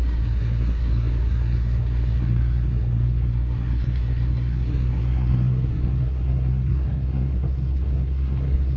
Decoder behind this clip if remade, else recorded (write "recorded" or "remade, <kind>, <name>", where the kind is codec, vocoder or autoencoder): remade, codec, SNAC